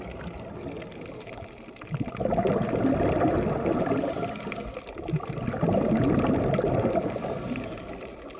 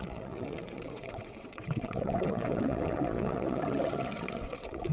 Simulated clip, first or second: second